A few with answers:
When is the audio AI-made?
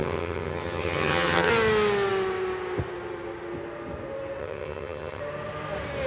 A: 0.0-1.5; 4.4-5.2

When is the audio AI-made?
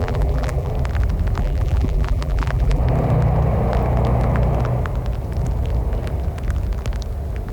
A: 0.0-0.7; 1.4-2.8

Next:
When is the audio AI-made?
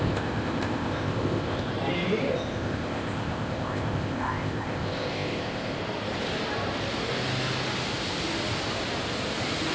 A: 0.0-1.7; 2.3-5.8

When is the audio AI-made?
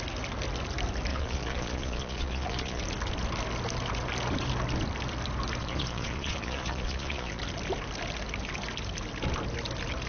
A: 1.1-2.8; 5.6-7.4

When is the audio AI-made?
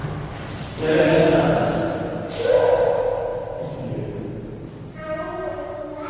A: none